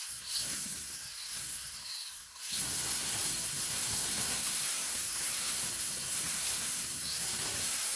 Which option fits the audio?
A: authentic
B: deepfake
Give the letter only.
B